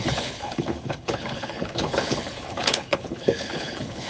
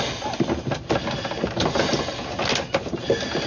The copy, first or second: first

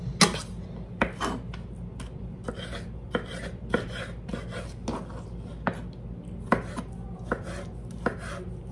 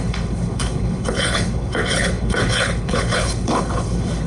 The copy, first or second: second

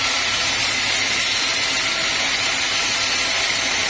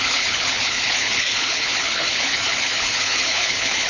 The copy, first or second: second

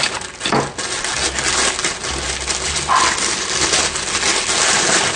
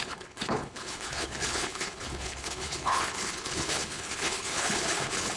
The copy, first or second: second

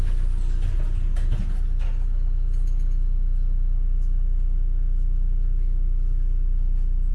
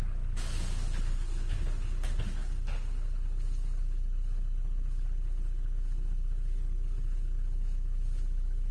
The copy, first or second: second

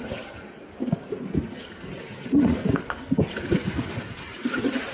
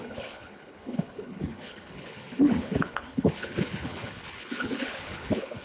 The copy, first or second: second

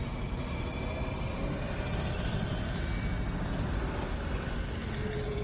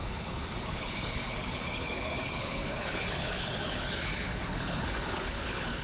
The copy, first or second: second